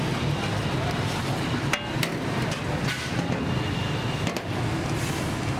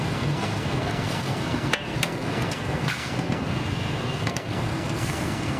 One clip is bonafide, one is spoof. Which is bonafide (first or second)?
first